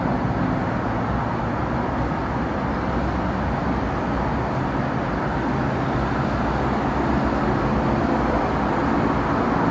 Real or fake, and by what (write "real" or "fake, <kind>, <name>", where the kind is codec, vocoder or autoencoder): real